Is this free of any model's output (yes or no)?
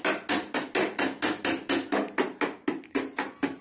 yes